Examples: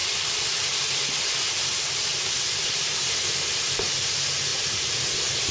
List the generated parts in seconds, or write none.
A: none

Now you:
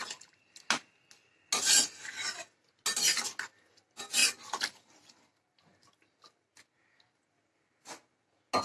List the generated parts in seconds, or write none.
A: none

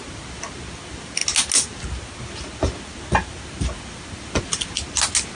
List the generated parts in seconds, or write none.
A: none

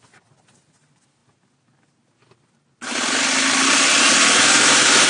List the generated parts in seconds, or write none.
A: none

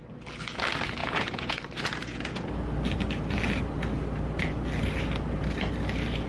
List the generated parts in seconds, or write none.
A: 1.0-1.6 (vocoder, Vocos); 2.0-2.5

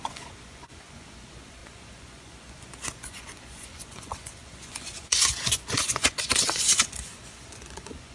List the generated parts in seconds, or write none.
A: 0.0-8.1 (vocoder, Vocos)

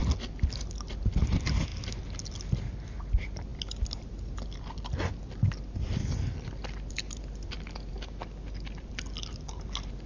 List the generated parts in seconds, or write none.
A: none

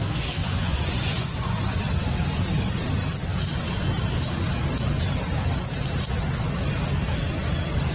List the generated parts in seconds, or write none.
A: 0.4-1.8 (vocoder, Vocos)